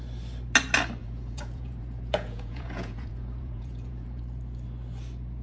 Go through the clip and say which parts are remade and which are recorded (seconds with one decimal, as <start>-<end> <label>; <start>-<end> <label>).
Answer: 0.0-1.0 recorded; 1.0-4.2 remade; 4.2-5.4 recorded